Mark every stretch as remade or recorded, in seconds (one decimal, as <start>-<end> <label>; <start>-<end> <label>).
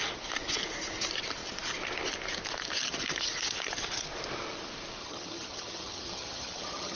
0.0-5.0 recorded; 5.0-7.0 remade